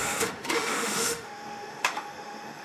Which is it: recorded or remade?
remade